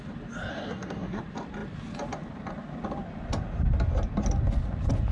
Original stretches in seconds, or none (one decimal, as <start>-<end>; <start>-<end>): 0.0-0.5; 1.2-5.1